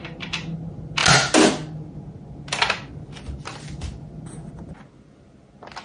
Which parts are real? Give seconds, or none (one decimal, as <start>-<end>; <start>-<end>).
0.0-5.8